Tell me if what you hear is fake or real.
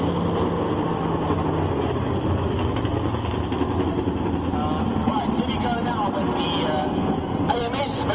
real